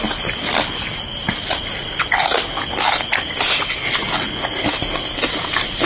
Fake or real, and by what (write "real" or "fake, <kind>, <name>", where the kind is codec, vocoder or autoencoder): real